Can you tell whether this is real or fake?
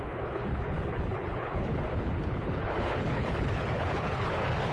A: fake